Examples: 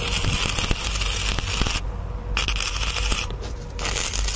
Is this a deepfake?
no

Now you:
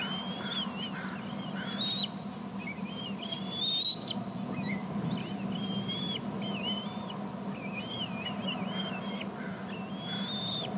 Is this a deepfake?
no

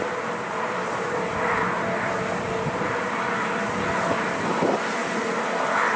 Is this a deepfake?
no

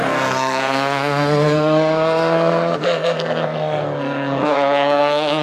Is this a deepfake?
yes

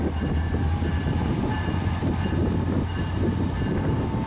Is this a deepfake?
no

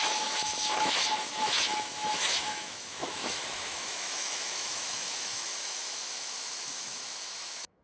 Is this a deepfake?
yes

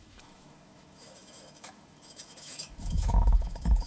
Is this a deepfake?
yes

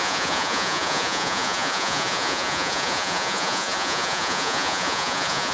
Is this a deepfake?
yes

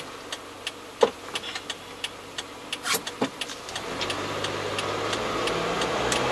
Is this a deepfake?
no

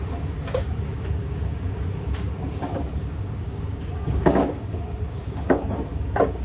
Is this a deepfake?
yes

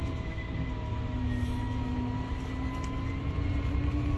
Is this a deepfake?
no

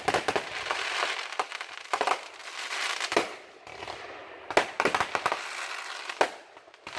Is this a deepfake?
no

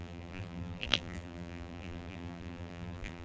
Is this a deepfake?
yes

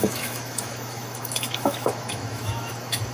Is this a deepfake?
yes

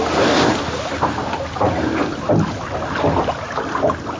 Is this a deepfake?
no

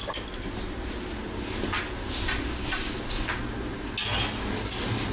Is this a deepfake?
no